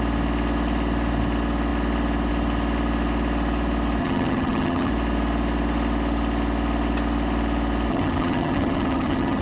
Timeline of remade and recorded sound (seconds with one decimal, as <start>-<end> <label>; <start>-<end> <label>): 0.0-4.0 recorded; 4.0-4.9 remade; 4.9-7.9 recorded; 7.9-9.4 remade